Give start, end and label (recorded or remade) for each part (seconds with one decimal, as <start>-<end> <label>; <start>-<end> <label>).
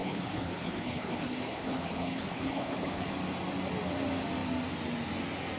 0.0-3.1 remade; 3.1-5.6 recorded